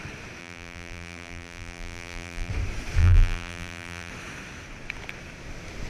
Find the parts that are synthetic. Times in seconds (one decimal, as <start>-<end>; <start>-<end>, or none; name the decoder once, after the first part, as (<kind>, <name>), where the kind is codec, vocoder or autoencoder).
0.4-2.5 (vocoder, BigVGAN v2); 3.0-4.1